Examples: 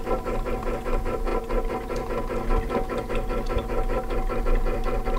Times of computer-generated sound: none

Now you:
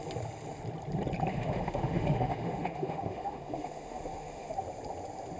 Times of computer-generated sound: 1.3-4.5 (autoencoder, DAC-VAE)

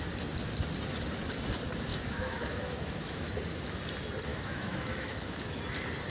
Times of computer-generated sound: 1.9-3.3 (autoencoder, DAC-VAE); 4.3-5.6

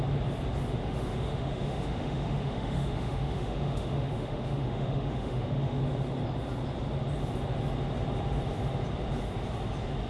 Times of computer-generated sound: 0.8-5.8 (autoencoder, DAC-VAE)

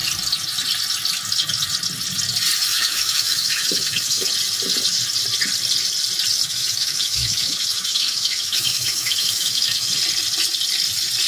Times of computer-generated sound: 2.7-4.3 (autoencoder, DAC-VAE); 6.3-10.0

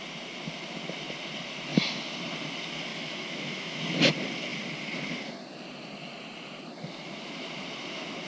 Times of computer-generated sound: 2.9-3.8 (autoencoder, DAC-VAE)